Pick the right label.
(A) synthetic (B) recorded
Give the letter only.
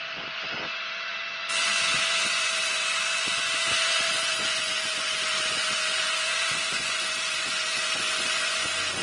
A